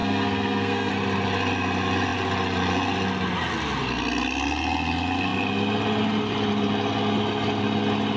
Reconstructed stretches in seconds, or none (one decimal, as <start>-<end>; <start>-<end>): 0.0-0.9